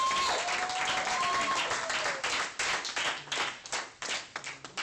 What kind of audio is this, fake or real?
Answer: real